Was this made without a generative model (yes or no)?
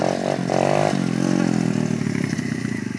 yes